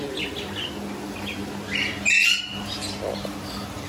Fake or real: real